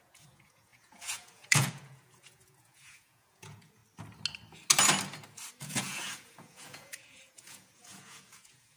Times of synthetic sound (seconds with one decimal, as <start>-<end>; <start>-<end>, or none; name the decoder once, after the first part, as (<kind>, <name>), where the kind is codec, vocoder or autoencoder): 0.0-3.8 (vocoder, Vocos); 5.6-8.8